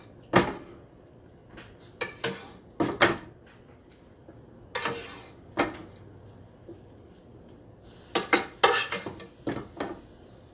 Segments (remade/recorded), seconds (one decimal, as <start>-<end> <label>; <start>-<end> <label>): 0.0-10.5 recorded